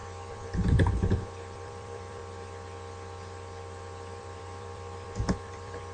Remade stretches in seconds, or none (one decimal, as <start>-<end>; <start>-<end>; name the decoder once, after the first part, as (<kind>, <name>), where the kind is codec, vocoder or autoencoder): 0.0-2.2 (vocoder, BigVGAN v2); 4.2-5.9